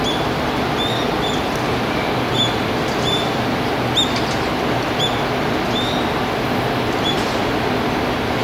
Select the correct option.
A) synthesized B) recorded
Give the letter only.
B